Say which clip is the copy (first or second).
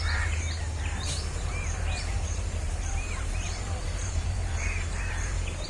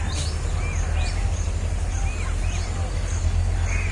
first